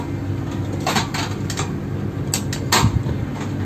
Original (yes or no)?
yes